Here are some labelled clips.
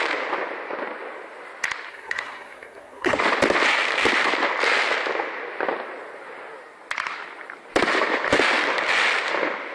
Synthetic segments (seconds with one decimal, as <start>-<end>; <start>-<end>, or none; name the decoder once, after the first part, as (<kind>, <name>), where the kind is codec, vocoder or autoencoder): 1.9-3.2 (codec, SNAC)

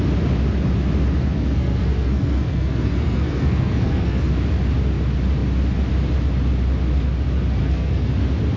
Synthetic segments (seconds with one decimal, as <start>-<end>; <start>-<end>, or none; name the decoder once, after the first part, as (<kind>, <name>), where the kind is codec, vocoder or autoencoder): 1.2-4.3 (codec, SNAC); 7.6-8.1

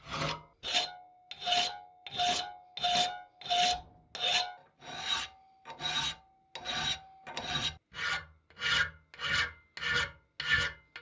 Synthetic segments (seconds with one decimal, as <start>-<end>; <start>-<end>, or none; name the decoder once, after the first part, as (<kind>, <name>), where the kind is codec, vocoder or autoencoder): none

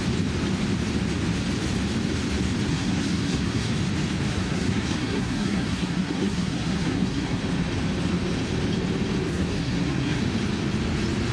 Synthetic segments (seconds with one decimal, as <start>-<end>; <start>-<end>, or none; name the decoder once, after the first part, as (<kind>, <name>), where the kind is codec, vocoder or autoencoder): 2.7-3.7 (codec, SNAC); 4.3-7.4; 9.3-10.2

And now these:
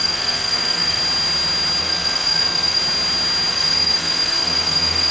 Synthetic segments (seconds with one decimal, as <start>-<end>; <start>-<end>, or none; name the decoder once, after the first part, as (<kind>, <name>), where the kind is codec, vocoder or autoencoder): 0.0-1.0 (codec, SNAC); 1.8-2.8; 3.5-5.1

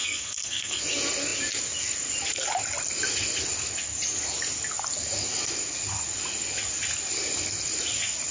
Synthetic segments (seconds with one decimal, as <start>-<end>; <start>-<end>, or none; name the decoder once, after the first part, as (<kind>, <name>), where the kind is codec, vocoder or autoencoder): 0.0-0.8 (codec, SNAC)